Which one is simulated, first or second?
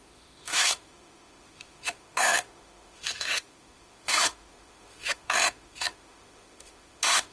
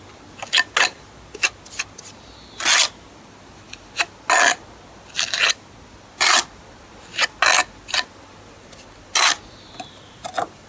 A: first